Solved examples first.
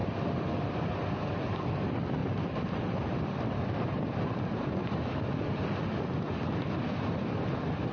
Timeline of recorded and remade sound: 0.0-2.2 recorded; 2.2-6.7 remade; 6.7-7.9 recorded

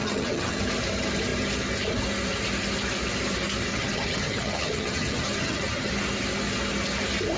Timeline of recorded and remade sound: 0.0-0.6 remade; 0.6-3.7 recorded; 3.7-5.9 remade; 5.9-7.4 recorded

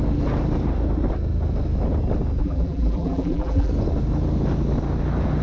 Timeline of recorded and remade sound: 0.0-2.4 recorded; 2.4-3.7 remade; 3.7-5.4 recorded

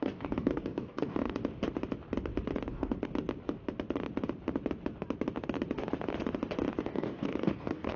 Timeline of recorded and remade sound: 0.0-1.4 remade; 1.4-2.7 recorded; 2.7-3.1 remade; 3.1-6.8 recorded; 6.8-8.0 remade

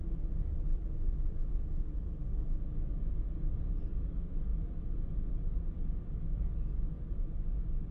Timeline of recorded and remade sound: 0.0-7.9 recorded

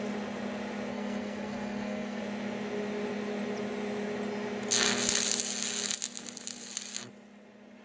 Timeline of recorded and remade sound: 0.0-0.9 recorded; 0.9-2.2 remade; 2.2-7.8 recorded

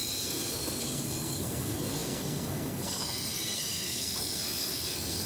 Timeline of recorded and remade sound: 0.0-5.3 remade